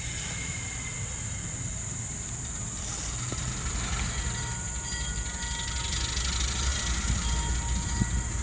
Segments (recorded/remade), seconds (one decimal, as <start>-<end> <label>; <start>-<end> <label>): 0.0-8.4 recorded